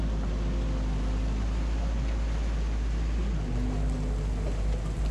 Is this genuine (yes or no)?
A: yes